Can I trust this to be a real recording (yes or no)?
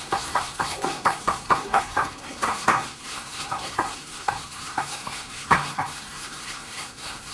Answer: no